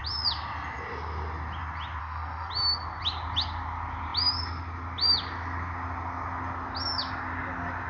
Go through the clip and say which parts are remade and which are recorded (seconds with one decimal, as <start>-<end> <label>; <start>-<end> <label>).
0.0-2.0 recorded; 2.0-2.5 remade; 2.5-7.9 recorded